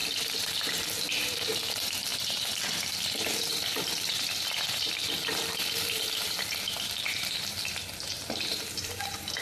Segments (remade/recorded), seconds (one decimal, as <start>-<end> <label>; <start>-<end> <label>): 0.0-0.7 remade; 0.7-2.1 recorded; 2.1-7.2 remade; 7.2-9.4 recorded